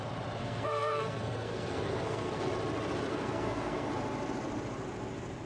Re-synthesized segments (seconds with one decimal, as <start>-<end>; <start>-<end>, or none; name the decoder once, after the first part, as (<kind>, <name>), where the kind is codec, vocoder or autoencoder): 0.4-2.5 (codec, SNAC); 3.1-3.9